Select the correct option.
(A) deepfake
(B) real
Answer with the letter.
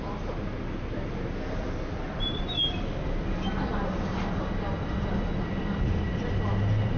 B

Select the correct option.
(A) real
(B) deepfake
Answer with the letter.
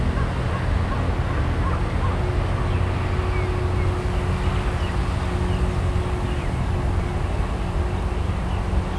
A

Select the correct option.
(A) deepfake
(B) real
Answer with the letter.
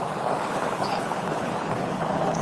A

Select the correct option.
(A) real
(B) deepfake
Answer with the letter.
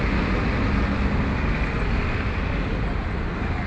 A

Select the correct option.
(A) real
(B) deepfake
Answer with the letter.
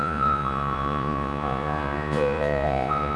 B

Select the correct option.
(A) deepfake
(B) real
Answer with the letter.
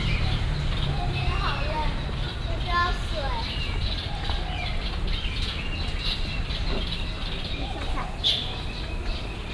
B